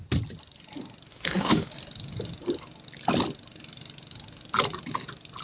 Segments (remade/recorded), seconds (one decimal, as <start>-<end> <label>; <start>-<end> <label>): 0.0-1.1 recorded; 1.1-1.7 remade; 1.7-5.4 recorded